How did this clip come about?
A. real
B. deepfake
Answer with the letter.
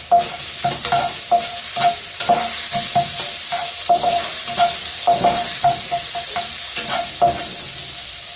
A